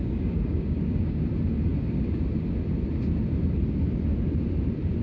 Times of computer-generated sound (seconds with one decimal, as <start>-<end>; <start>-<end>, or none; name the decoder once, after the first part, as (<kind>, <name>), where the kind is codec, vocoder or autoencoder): 0.0-1.2 (codec, DAC)